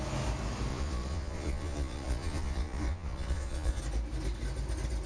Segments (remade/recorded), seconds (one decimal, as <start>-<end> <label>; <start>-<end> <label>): 0.0-0.7 recorded; 0.7-3.8 remade; 3.8-5.1 recorded